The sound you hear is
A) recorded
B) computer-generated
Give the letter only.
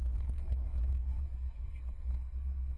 B